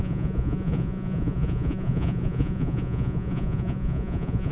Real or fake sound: fake